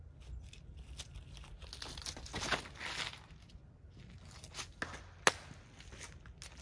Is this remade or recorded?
recorded